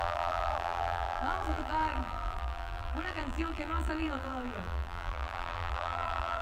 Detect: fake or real fake